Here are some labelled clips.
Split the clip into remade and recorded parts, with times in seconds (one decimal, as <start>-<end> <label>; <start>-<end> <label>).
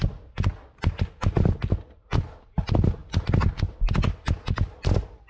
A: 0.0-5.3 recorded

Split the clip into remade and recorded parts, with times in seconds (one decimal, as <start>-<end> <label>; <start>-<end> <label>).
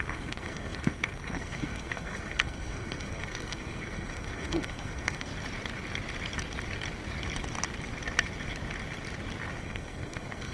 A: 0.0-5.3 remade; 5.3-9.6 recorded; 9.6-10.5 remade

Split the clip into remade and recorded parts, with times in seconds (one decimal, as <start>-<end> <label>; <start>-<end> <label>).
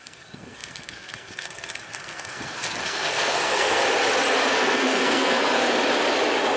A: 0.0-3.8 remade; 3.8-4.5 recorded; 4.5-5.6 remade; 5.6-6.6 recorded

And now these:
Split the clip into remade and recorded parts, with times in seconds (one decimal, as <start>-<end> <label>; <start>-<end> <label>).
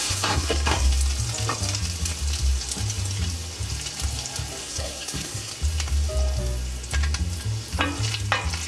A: 0.0-0.9 remade; 0.9-4.6 recorded; 4.6-5.5 remade; 5.5-8.7 recorded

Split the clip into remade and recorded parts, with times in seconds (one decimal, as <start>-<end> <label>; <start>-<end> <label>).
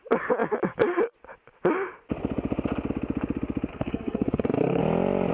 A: 0.0-3.7 recorded; 3.7-4.8 remade; 4.8-5.3 recorded